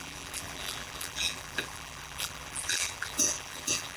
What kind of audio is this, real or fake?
fake